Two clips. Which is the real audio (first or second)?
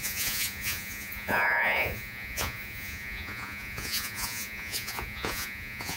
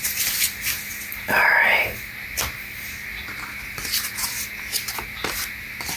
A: second